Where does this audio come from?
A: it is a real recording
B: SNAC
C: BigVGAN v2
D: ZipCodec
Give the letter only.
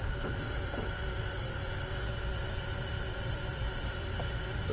A